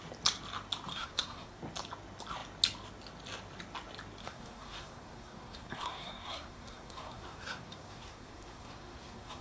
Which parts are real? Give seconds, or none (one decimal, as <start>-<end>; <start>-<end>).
0.0-0.9; 1.6-4.2